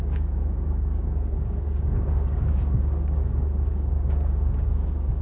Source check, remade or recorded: remade